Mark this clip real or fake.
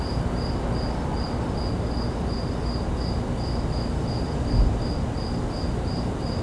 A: real